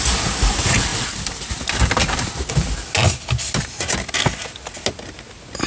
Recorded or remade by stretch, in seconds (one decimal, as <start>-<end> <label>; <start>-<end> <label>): 0.0-5.7 recorded